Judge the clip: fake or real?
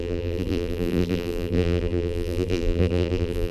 fake